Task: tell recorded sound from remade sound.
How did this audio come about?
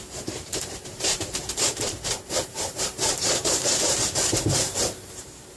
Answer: remade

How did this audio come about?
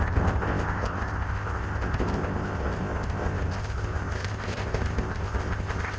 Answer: remade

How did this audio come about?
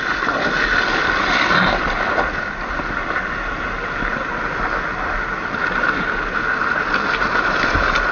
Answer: recorded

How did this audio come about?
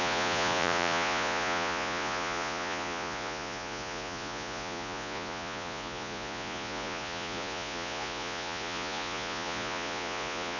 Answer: remade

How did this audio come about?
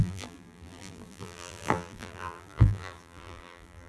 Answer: remade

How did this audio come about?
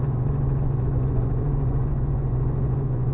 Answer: remade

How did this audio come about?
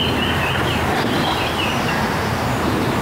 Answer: recorded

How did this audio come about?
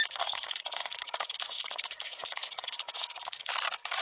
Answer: remade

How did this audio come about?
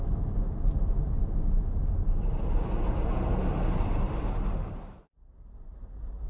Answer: recorded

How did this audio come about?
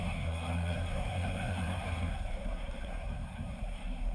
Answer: remade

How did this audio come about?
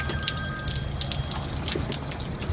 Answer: recorded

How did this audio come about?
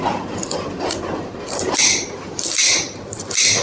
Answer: recorded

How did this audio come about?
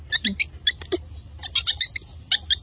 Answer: recorded